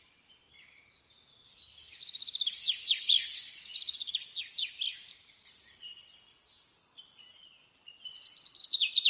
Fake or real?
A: real